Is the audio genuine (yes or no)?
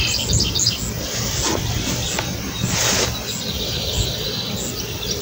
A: yes